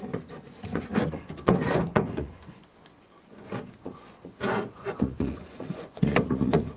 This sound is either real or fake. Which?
fake